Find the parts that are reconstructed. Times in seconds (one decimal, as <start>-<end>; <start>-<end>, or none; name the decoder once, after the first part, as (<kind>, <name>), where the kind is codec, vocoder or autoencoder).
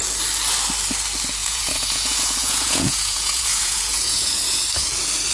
1.4-4.6 (vocoder, Vocos)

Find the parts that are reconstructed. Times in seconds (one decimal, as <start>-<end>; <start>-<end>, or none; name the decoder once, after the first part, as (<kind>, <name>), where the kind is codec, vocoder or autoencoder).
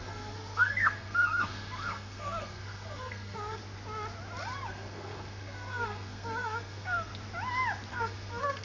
0.0-3.6 (codec, SNAC); 4.7-7.1; 7.9-8.6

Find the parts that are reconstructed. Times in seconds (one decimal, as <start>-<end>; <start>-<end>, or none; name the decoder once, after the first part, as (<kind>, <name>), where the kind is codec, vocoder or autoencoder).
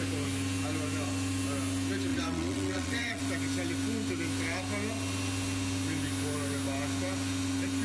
2.1-3.2 (vocoder, WaveNeXt)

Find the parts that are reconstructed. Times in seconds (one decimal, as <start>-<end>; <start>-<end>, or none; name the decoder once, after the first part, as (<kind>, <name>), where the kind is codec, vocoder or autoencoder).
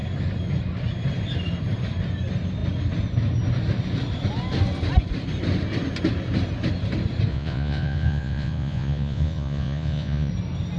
7.3-10.3 (vocoder, Vocos)